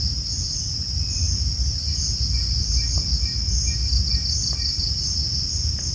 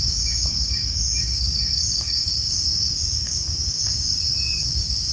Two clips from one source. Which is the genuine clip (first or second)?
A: first